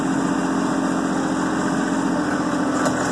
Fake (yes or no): no